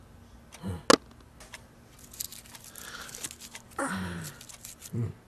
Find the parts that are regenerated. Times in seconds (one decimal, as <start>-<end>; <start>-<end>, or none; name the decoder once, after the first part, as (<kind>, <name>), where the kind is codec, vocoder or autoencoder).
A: none